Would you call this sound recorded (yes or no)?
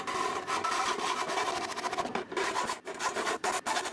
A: yes